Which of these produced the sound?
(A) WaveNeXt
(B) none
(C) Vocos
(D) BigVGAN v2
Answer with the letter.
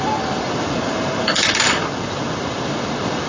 D